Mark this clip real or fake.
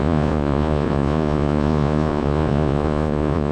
fake